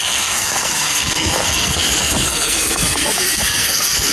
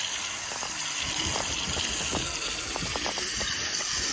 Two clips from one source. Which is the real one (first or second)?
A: second